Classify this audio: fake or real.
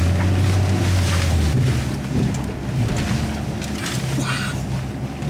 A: real